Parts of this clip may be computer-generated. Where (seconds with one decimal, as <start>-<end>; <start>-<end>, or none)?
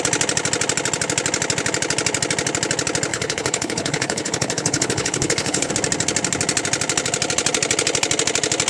3.1-5.7